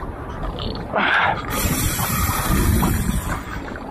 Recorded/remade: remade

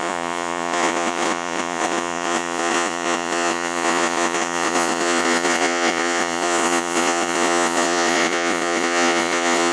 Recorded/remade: remade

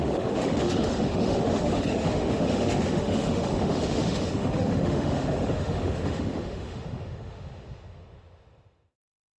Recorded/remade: remade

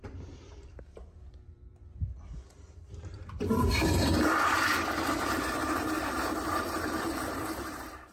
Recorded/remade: remade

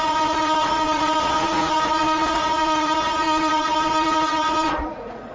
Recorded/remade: remade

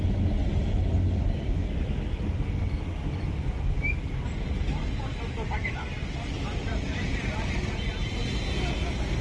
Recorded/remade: recorded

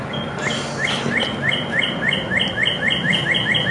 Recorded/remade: recorded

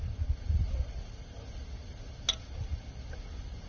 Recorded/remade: recorded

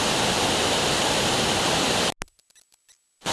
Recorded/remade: recorded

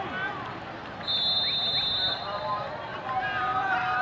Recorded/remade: recorded